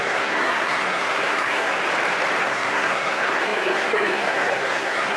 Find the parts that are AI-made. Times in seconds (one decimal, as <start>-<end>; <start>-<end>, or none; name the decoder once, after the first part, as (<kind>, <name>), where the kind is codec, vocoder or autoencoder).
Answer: 0.0-1.8 (codec, SNAC); 2.4-5.2